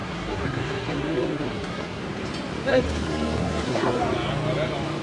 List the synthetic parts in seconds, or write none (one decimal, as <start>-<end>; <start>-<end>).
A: 0.0-2.0; 2.7-4.0